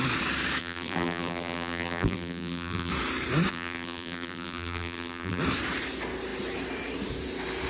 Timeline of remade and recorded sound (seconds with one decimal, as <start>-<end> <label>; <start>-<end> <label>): 0.0-0.6 recorded; 0.6-2.9 remade; 2.9-3.5 recorded; 3.5-5.4 remade; 5.4-7.7 recorded